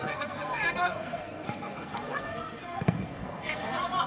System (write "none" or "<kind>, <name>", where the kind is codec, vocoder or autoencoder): codec, SNAC